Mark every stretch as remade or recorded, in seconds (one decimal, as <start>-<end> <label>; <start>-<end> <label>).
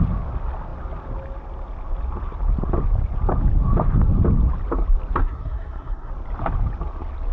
0.0-5.2 recorded; 5.2-6.1 remade; 6.1-7.3 recorded